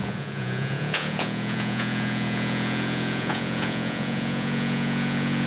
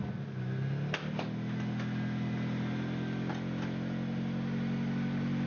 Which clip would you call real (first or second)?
second